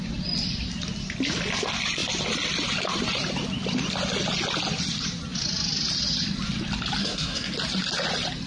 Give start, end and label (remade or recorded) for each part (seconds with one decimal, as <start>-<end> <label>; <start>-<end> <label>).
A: 0.0-7.0 recorded; 7.0-7.5 remade; 7.5-8.5 recorded